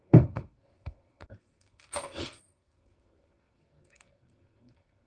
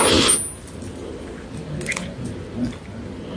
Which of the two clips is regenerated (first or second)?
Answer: first